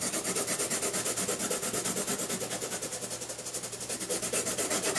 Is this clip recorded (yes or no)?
yes